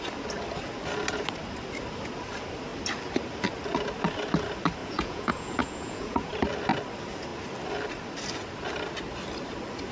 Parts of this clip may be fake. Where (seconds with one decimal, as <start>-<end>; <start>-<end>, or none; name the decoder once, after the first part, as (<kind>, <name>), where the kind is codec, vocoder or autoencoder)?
4.8-6.3 (vocoder, Vocos)